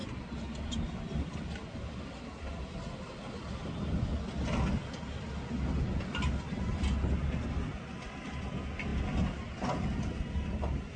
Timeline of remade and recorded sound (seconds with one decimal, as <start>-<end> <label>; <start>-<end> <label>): 0.0-11.0 recorded